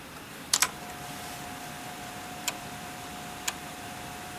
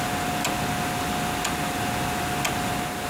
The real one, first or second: second